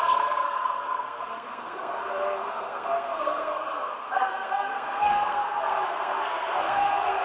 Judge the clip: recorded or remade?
remade